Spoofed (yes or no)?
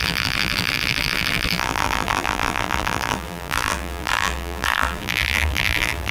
yes